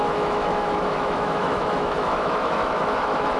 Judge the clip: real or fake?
fake